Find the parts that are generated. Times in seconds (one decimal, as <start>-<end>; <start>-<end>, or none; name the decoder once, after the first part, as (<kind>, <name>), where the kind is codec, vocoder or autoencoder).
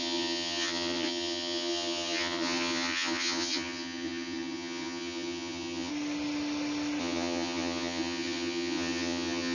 0.0-5.9 (vocoder, HiFi-GAN); 7.0-9.5